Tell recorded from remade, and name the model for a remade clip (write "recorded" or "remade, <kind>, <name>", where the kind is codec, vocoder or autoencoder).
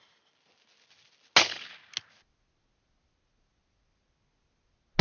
recorded